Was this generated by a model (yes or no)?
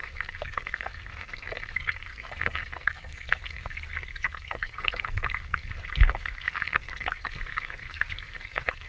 yes